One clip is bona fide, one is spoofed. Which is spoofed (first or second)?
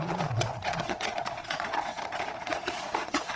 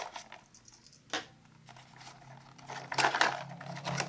first